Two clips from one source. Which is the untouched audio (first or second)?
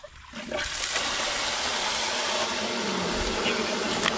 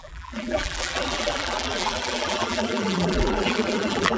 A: first